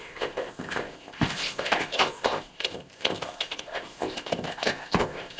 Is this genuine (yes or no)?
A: no